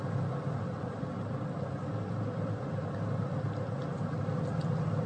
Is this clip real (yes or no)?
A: yes